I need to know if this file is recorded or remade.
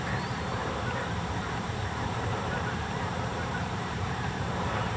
remade